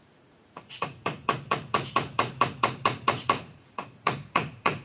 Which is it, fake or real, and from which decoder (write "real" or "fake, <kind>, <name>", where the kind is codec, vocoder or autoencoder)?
fake, vocoder, Vocos